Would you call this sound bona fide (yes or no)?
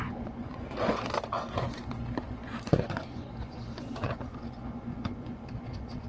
no